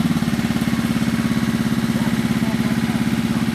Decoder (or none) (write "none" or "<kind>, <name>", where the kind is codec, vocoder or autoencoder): none